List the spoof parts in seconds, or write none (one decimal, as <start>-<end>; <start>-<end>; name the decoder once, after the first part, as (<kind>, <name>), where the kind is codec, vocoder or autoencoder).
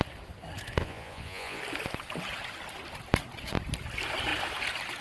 0.8-1.6 (vocoder, Vocos)